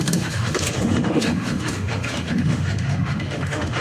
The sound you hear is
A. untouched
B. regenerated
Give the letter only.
B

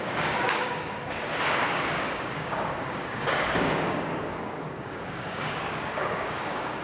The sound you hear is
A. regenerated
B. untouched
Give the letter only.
A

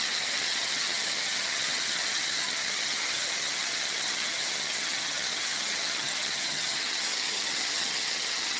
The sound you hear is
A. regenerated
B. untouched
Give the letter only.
A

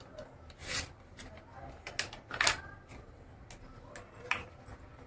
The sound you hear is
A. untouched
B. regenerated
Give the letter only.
A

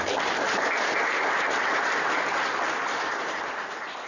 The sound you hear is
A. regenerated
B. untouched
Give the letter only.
A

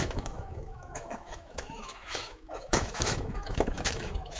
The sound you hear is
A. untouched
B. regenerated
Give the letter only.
B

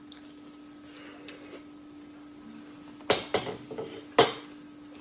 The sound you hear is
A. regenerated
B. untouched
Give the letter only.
B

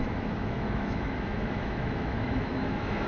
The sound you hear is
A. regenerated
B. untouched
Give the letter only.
A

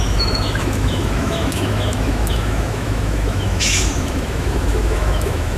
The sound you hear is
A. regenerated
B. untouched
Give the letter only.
A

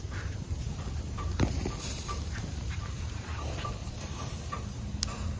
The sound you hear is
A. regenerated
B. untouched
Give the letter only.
A